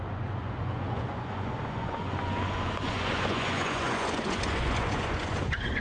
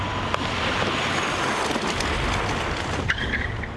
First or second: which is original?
second